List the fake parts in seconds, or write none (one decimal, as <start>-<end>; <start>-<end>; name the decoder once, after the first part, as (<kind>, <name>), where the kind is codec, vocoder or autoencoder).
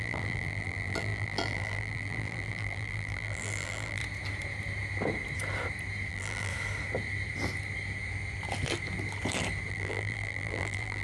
0.0-4.0 (vocoder, BigVGAN v2); 6.1-6.5; 9.7-11.0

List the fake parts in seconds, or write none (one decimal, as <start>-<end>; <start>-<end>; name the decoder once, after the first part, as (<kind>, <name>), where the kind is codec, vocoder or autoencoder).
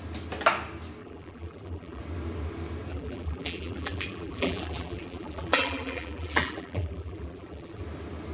1.0-2.0 (vocoder, BigVGAN v2); 2.9-7.8